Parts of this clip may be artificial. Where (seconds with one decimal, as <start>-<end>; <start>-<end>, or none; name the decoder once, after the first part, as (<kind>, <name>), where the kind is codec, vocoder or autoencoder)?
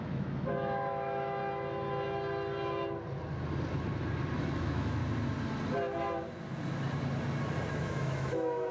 0.0-1.4 (autoencoder, DAC-VAE); 4.4-5.0; 7.7-8.7